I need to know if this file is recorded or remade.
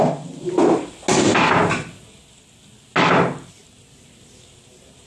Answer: recorded